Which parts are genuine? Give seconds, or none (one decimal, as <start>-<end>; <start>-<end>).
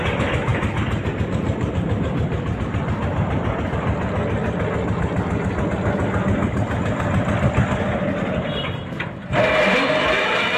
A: 0.0-10.6